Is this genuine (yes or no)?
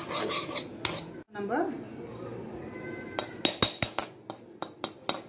yes